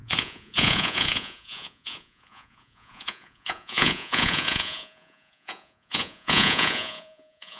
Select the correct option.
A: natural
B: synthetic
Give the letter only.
B